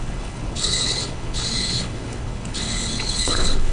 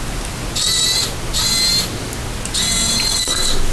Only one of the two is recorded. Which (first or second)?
second